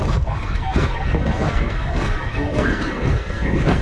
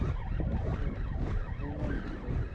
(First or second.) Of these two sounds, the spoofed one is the first